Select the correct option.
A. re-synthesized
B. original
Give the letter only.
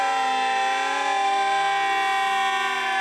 B